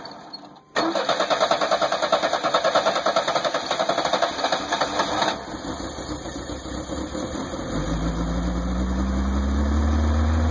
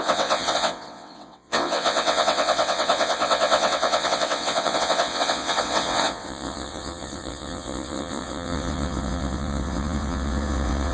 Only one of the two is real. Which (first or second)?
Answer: first